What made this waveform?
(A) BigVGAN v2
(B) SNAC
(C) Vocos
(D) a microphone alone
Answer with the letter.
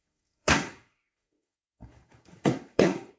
B